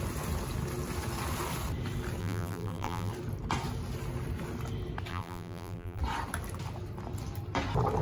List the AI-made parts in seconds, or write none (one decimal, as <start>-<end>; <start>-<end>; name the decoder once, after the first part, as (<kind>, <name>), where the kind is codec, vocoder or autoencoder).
2.2-3.1 (vocoder, BigVGAN v2); 5.1-6.0